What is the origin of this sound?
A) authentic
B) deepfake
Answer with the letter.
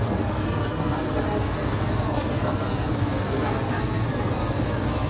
B